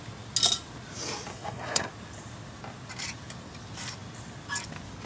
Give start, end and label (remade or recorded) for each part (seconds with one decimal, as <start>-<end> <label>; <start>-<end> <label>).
0.0-1.3 recorded; 1.3-1.9 remade; 1.9-5.1 recorded